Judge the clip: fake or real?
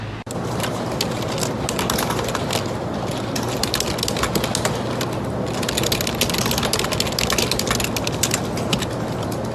real